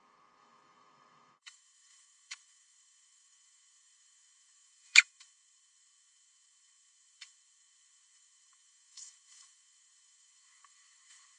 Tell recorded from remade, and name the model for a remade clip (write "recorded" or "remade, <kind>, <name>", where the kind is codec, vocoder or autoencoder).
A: remade, autoencoder, DAC-VAE